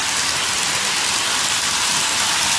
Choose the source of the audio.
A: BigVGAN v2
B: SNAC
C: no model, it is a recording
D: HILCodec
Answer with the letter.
C